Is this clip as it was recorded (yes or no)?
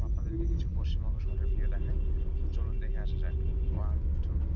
yes